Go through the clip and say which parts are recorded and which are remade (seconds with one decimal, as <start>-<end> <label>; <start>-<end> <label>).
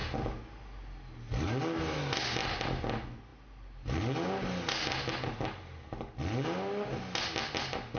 0.0-8.0 recorded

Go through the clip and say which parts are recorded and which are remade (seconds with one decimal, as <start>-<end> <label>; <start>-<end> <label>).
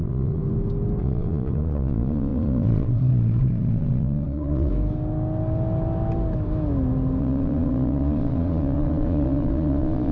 0.0-0.4 remade; 0.4-1.0 recorded; 1.0-4.7 remade; 4.7-7.2 recorded; 7.2-10.1 remade